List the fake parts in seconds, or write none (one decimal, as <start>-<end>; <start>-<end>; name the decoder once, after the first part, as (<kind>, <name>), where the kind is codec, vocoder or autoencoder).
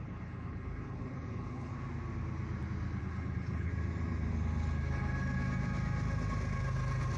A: 0.0-1.7 (codec, HILCodec); 3.0-3.7